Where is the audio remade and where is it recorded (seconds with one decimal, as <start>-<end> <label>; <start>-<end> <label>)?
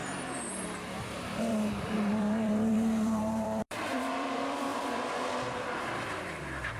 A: 0.0-0.9 recorded; 0.9-6.8 remade